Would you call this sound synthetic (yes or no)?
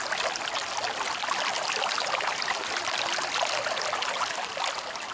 no